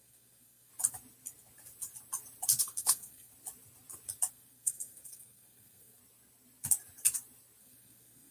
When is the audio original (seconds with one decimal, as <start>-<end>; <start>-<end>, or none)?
0.7-2.6; 3.3-4.3; 6.0-7.6